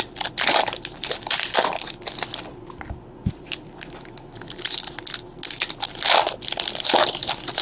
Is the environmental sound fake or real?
real